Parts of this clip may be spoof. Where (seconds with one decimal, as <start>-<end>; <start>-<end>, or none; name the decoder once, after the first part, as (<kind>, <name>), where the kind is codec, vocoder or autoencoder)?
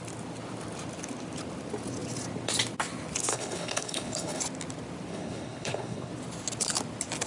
3.3-4.4 (codec, HILCodec); 5.1-6.1